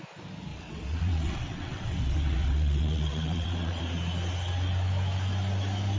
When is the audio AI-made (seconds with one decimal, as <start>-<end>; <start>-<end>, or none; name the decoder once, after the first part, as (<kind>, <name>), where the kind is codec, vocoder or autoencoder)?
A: 0.5-3.8 (vocoder, WaveNeXt)